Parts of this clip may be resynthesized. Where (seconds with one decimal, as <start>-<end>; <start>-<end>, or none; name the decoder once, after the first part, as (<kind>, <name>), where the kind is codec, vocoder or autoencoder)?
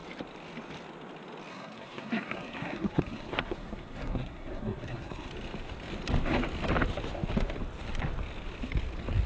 1.5-5.3 (codec, SNAC)